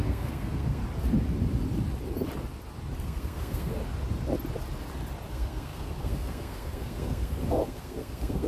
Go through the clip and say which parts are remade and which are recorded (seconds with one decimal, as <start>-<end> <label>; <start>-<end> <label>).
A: 0.0-0.8 remade; 0.8-3.0 recorded; 3.0-3.8 remade; 3.8-5.3 recorded; 5.3-8.5 remade